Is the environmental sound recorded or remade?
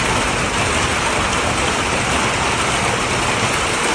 recorded